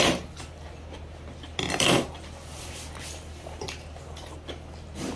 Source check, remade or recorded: recorded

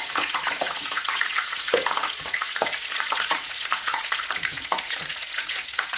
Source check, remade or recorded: remade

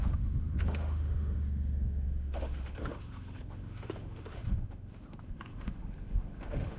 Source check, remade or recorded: remade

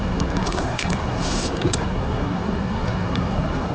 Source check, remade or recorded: remade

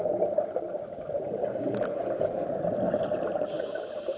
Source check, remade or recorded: recorded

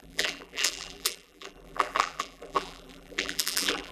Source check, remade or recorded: remade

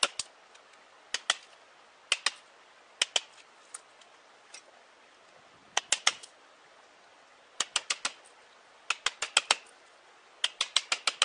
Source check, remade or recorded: recorded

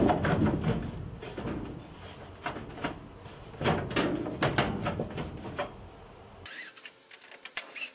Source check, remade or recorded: recorded